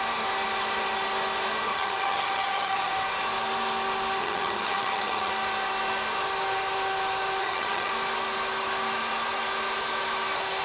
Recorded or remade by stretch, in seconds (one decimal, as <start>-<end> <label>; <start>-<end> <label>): 0.0-1.7 recorded; 1.7-2.9 remade; 2.9-4.2 recorded; 4.2-5.3 remade; 5.3-7.4 recorded; 7.4-7.9 remade; 7.9-10.6 recorded